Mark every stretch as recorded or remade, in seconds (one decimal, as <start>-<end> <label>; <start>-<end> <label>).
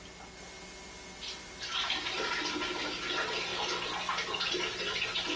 0.0-5.4 recorded